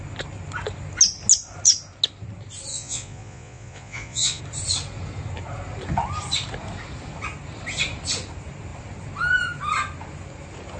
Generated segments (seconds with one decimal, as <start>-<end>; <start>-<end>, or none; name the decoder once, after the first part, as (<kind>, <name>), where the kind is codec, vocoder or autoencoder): 2.7-4.4 (vocoder, Vocos)